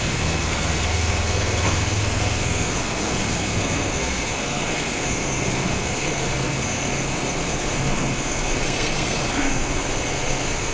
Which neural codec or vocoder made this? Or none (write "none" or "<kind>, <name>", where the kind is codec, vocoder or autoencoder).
codec, SNAC